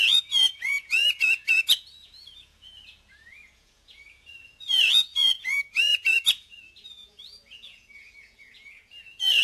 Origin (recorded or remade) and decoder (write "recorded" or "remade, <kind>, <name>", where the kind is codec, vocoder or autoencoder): remade, vocoder, Vocos